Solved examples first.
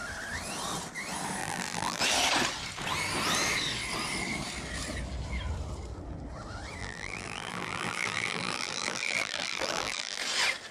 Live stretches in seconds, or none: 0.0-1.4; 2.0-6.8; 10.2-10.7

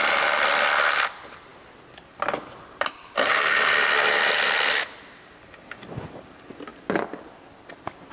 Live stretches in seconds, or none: 6.7-7.2